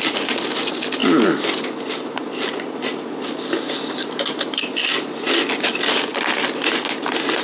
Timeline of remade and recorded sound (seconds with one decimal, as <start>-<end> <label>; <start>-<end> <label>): 0.0-7.4 recorded